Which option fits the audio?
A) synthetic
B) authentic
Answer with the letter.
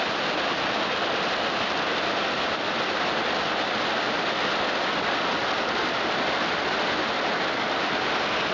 B